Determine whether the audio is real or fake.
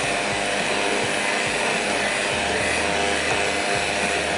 real